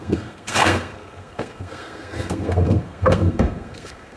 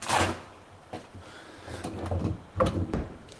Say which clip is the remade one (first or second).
first